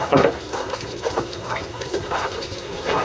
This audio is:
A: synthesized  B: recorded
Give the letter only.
A